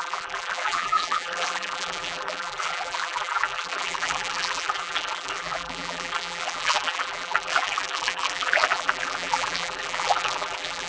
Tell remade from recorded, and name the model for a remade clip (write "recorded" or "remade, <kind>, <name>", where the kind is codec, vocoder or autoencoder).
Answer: remade, vocoder, BigVGAN v2